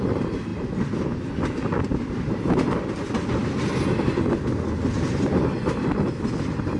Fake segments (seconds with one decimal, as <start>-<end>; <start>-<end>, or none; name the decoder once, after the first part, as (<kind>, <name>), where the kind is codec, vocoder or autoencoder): none

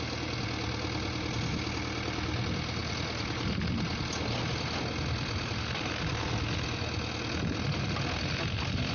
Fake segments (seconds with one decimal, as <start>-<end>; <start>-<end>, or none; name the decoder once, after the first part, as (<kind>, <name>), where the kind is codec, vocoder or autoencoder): none

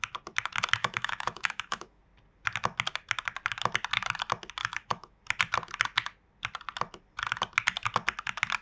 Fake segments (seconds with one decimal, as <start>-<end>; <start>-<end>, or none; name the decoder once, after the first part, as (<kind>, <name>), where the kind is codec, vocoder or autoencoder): 0.8-2.0 (autoencoder, DAC-VAE); 4.6-5.2

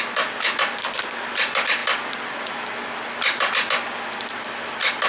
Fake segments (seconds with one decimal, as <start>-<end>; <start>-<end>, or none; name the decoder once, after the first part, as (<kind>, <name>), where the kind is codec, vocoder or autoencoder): none

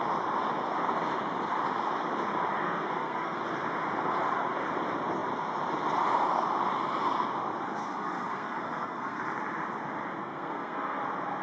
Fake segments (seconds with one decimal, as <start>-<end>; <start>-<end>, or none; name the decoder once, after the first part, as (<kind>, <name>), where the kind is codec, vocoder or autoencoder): 2.6-3.4 (codec, SNAC); 7.8-9.2; 10.2-11.0